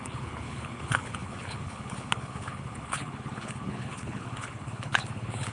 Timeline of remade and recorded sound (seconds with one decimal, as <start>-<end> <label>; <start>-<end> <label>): 0.0-5.5 remade